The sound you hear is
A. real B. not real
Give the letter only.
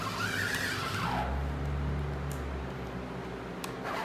A